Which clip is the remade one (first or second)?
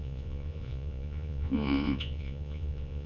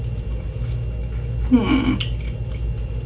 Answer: first